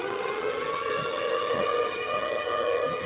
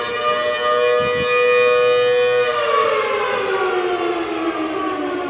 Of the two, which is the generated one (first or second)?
first